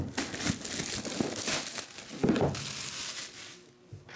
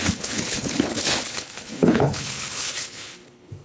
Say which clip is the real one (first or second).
first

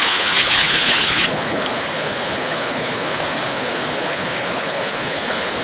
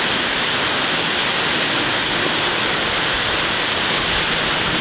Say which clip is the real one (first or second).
second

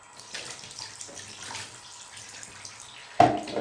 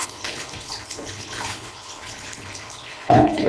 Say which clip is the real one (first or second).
first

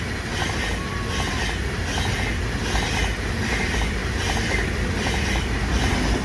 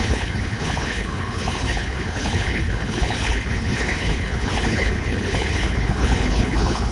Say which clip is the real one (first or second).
first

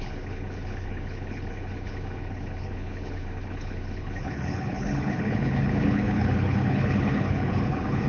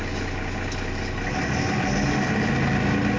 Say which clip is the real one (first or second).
second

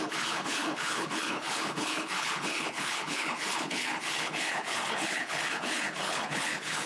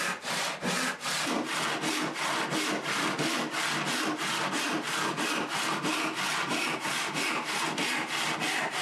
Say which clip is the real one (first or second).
second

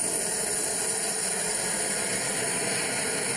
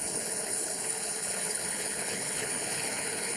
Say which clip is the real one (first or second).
first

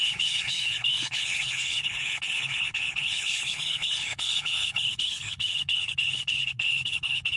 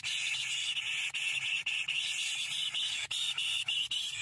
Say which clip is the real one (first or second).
second